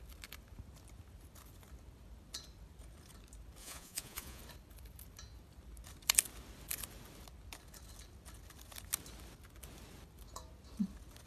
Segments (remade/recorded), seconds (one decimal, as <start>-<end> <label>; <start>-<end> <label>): 0.0-3.6 recorded; 3.6-4.4 remade; 4.4-11.3 recorded